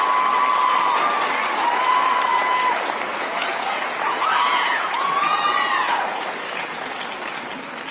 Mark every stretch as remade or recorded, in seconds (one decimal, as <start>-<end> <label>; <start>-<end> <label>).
0.0-3.1 recorded; 3.1-6.9 remade; 6.9-7.9 recorded